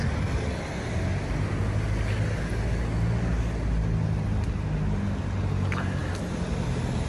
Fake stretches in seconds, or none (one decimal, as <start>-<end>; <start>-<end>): 6.0-7.1